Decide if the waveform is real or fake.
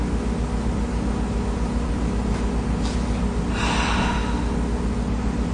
real